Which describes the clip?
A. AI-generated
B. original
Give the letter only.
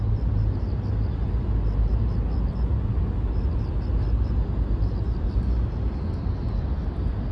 B